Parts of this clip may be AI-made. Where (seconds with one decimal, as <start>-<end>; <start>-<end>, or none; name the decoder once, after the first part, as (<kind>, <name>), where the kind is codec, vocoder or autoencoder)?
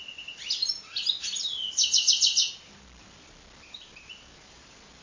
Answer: none